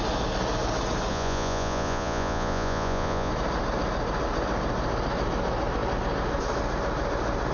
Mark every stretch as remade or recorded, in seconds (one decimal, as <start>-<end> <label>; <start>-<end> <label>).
0.0-1.1 recorded; 1.1-3.3 remade; 3.3-7.5 recorded